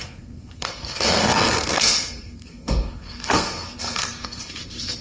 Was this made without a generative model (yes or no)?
no